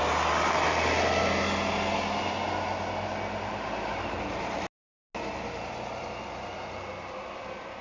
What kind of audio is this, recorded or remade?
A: recorded